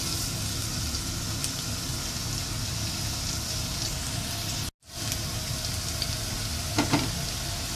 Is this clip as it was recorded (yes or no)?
yes